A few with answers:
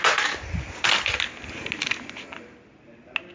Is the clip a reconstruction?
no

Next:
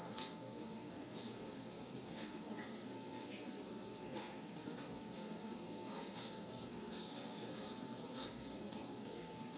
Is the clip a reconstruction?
yes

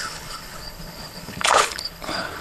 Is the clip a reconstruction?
yes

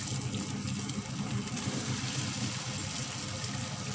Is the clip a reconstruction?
no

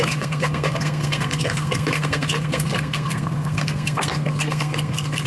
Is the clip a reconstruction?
yes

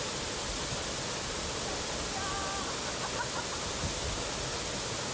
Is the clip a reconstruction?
no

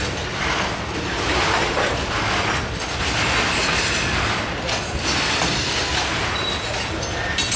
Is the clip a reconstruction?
no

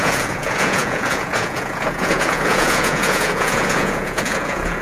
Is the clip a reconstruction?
yes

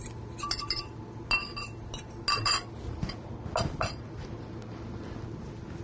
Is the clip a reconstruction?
no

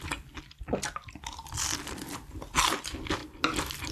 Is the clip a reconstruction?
no